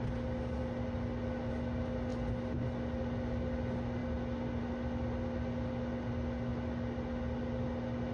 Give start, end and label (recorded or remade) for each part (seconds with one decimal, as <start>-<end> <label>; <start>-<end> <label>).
0.0-8.1 recorded